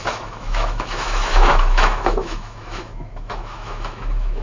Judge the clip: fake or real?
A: fake